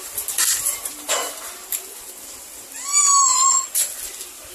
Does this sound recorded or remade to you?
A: recorded